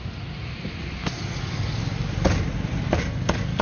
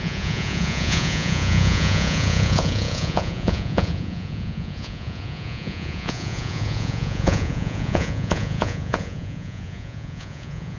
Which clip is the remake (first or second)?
second